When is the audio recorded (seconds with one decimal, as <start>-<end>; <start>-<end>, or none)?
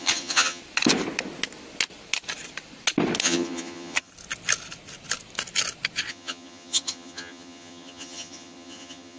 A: 0.6-3.2; 4.1-6.1